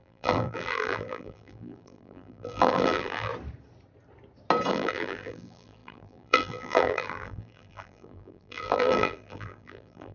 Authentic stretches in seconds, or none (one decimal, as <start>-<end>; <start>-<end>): 3.3-4.7